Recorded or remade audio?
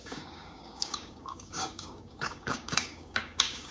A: remade